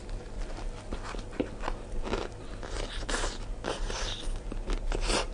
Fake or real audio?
real